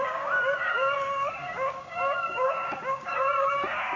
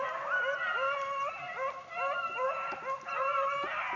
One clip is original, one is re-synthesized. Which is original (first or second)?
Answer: second